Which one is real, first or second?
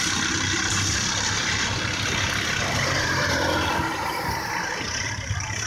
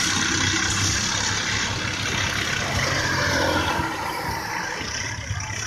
second